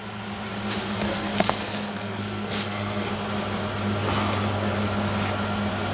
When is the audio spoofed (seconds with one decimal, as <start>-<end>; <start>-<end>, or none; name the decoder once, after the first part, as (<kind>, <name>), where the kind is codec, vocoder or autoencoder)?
0.8-3.1 (codec, SNAC)